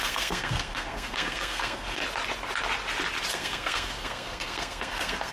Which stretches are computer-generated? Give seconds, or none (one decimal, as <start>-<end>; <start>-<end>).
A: 0.0-2.0; 3.3-5.3